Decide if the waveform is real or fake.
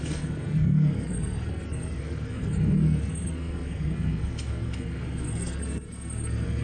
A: fake